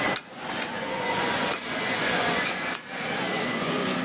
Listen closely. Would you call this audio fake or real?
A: fake